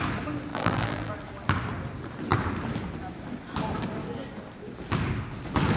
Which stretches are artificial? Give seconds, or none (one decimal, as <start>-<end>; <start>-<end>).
0.5-1.1